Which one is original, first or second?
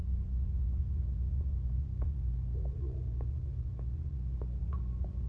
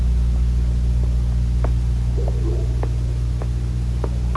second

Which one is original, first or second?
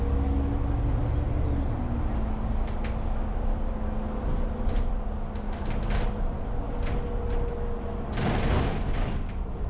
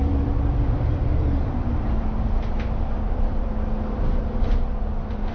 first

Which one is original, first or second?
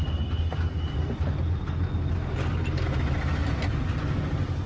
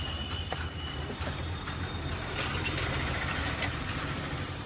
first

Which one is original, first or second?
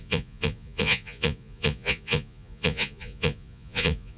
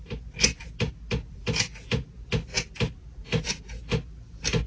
second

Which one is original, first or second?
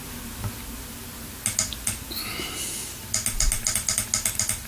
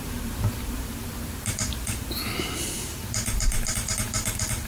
first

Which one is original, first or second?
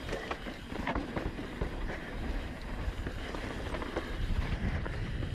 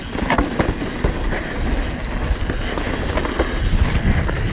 second